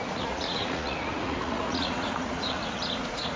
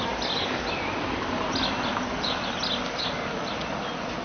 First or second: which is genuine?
second